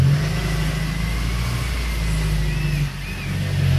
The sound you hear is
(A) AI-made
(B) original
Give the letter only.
B